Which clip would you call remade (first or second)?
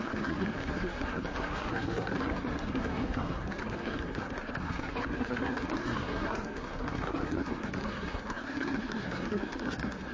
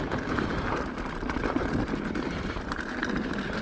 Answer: first